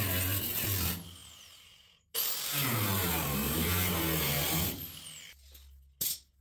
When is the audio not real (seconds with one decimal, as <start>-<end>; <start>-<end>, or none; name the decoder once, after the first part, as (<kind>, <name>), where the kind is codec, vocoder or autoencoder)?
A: 1.2-5.0 (vocoder, BigVGAN v2)